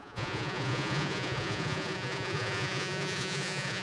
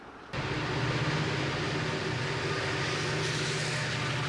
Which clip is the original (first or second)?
second